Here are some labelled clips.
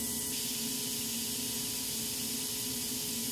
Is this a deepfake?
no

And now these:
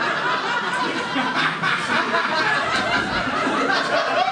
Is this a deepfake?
no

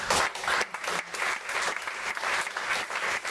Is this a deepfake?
no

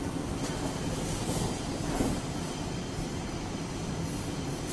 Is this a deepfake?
yes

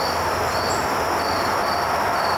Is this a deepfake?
no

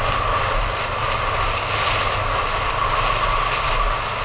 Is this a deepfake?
no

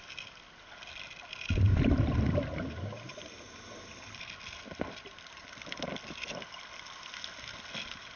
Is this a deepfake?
no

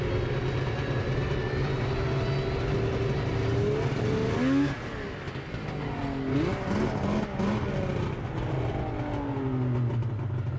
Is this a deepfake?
no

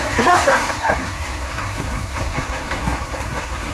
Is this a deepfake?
yes